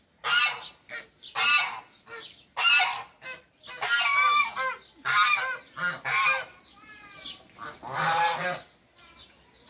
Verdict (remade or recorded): recorded